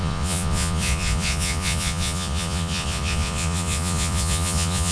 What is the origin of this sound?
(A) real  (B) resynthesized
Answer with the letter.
B